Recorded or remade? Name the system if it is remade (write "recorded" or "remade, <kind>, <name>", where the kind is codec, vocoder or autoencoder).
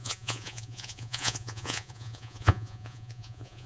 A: remade, vocoder, Vocos